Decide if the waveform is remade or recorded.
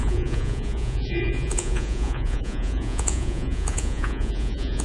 remade